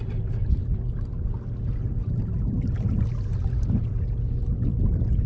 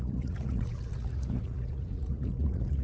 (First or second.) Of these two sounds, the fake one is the second